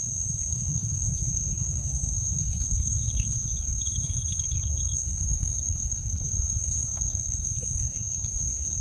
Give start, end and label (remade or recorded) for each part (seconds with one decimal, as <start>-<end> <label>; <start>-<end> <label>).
0.0-8.8 remade